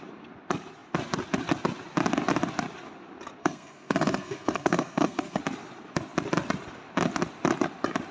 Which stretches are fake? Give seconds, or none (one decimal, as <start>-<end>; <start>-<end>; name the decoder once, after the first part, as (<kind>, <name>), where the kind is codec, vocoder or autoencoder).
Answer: 3.4-5.4 (codec, SNAC)